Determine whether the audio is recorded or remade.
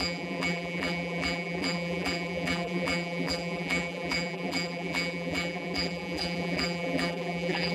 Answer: remade